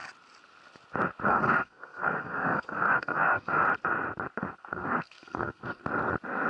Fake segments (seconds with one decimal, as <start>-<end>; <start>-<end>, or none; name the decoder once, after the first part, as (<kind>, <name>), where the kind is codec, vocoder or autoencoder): 1.3-3.6 (codec, SNAC); 4.4-5.8